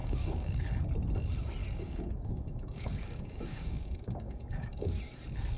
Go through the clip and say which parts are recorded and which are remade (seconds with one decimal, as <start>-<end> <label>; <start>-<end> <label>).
0.0-0.6 remade; 0.6-1.6 recorded; 1.6-5.0 remade; 5.0-5.6 recorded